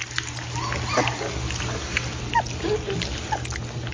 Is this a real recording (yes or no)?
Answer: yes